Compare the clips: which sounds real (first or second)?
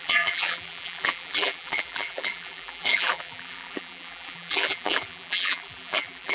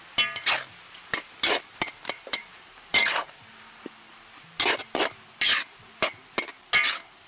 second